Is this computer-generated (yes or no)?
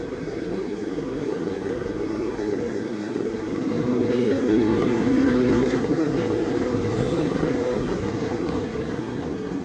yes